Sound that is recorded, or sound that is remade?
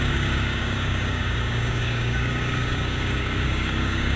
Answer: remade